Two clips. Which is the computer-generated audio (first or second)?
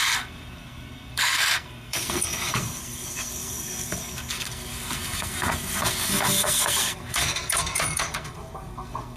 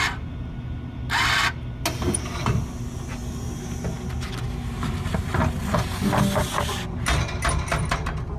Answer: first